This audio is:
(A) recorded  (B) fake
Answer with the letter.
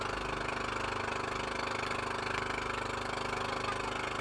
A